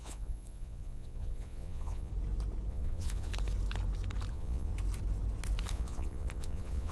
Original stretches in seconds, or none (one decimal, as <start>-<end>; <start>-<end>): 2.1-2.7; 3.3-4.3; 4.7-5.7